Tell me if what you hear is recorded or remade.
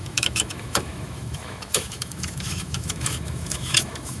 remade